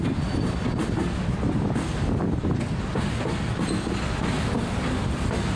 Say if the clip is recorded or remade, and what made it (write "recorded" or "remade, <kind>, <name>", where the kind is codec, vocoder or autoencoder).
recorded